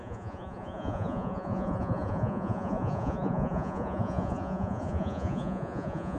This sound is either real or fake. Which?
fake